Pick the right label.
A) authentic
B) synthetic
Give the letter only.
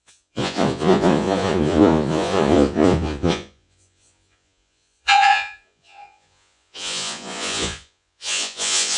B